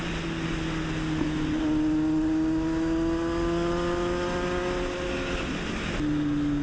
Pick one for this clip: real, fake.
real